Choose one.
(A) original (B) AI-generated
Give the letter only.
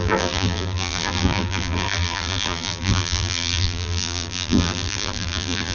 B